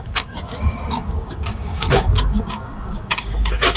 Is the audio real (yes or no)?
no